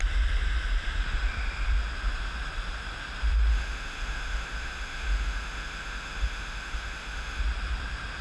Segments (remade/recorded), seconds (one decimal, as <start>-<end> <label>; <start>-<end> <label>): 0.0-3.5 recorded; 3.5-7.4 remade; 7.4-8.2 recorded